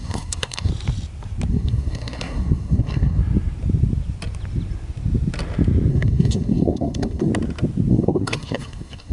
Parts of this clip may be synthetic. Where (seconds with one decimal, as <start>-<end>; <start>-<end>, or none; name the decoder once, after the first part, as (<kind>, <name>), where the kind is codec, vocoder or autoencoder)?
0.0-0.7 (codec, SNAC); 1.5-3.2; 5.9-7.3; 7.9-9.1